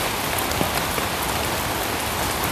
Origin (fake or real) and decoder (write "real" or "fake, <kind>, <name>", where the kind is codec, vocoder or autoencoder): real